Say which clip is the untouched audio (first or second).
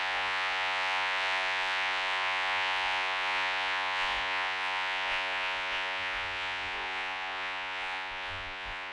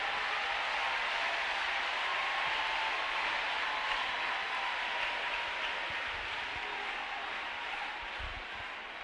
second